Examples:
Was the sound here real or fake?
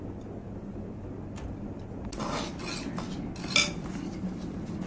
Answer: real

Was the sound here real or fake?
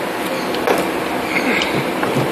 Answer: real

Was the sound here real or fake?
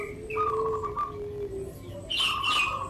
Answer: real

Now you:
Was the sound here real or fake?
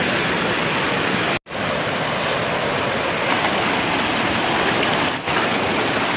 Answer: real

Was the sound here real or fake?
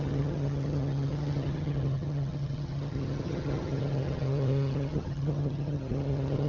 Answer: fake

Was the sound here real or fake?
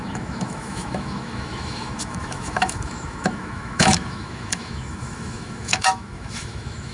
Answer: fake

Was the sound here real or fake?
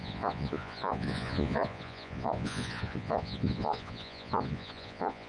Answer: fake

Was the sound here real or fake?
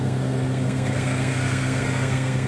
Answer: fake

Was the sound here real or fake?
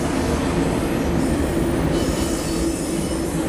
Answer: fake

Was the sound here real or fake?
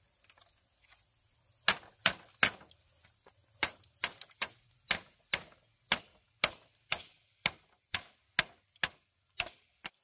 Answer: real